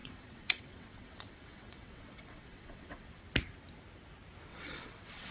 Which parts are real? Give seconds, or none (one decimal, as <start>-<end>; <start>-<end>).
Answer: 3.2-4.5

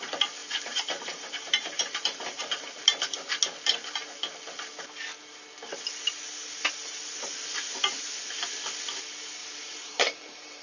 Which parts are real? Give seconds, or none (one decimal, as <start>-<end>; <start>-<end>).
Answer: 0.0-0.4; 2.4-9.4

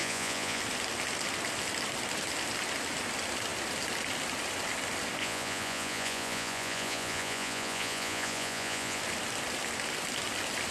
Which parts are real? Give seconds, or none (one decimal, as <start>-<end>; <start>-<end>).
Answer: 0.6-5.2; 9.0-10.7

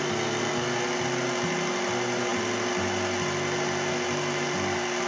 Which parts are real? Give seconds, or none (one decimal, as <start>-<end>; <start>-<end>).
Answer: 0.0-5.1

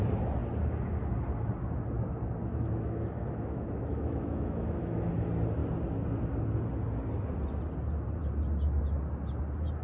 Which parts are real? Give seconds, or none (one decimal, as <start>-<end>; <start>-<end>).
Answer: 0.0-2.4; 5.1-9.8